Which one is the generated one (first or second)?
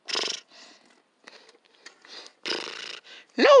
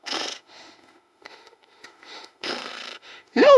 second